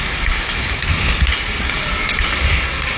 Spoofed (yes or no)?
no